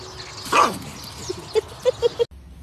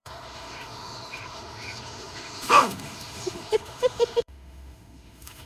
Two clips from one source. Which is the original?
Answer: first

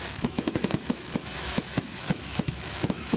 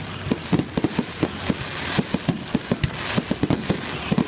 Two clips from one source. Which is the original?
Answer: second